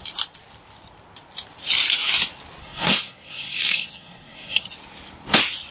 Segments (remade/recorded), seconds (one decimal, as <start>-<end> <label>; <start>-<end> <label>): 0.0-2.6 recorded; 2.6-4.7 remade; 4.7-5.7 recorded